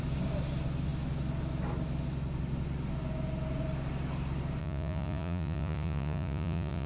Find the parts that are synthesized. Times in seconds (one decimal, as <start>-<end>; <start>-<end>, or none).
4.6-6.9

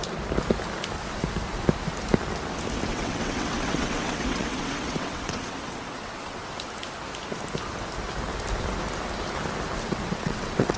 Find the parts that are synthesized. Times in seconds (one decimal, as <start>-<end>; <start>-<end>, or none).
2.9-6.4; 9.8-10.8

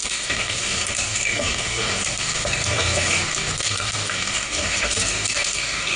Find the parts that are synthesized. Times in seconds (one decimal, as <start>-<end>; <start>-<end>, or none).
0.0-6.0

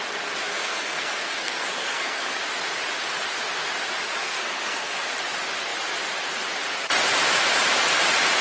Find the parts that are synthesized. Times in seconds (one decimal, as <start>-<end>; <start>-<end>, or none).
0.5-2.4; 4.2-5.1

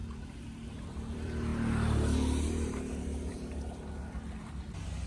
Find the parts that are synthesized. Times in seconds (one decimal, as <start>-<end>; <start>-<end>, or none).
0.0-1.5; 3.0-5.1

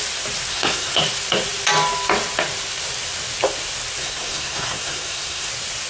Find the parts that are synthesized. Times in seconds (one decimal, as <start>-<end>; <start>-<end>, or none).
0.5-1.0; 4.0-5.5

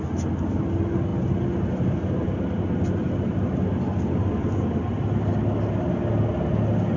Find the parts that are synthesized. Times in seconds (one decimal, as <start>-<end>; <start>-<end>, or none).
none

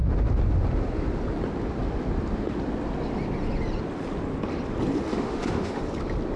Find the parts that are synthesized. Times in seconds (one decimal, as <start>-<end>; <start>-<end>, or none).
5.1-5.8